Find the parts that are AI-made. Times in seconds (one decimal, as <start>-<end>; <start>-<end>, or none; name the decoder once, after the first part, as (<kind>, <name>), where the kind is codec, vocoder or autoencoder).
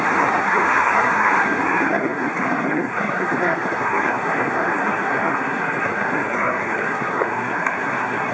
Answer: 0.0-8.3 (codec, SNAC)